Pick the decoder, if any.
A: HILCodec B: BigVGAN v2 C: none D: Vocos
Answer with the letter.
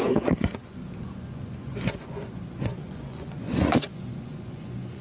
D